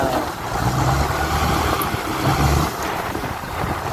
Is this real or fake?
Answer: fake